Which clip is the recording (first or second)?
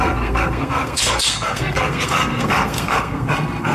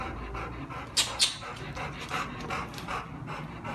second